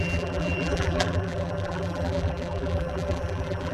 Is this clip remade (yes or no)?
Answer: yes